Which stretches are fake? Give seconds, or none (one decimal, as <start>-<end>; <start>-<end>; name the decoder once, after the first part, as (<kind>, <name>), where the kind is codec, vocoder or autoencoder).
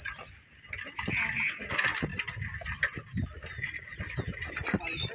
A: none